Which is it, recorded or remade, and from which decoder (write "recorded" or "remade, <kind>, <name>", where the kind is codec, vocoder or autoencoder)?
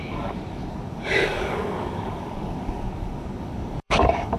remade, codec, DAC